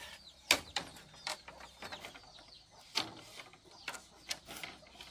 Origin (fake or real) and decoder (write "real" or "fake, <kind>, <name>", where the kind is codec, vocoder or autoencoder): real